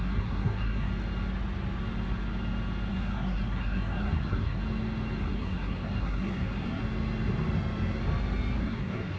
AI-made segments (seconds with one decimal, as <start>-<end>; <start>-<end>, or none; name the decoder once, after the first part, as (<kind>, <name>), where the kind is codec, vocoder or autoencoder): 0.0-0.9 (codec, SNAC); 2.9-4.6; 5.2-6.8; 8.6-9.2